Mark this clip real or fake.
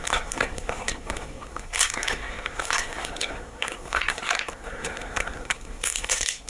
fake